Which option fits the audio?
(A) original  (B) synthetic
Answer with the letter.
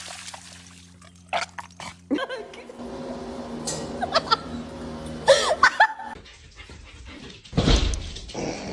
A